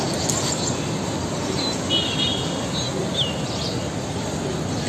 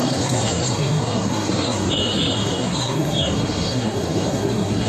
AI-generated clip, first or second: second